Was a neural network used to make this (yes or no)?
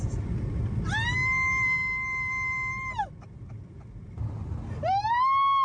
no